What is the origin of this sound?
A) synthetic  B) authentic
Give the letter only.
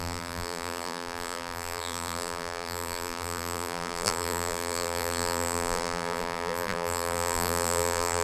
A